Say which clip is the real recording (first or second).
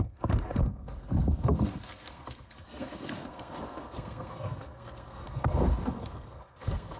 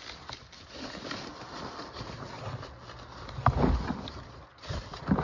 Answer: second